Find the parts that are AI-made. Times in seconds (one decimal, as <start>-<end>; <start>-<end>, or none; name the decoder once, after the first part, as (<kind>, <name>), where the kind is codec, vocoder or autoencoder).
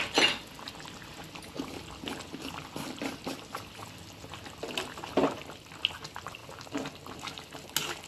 none